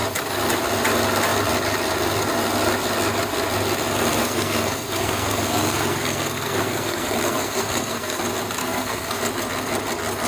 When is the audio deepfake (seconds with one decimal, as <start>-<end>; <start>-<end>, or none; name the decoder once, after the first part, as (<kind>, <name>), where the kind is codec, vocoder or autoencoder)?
4.2-8.2 (codec, SNAC); 8.6-9.2